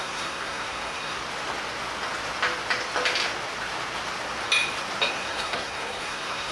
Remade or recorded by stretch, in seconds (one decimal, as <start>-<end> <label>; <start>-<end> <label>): 0.0-1.2 remade; 1.2-5.1 recorded; 5.1-6.5 remade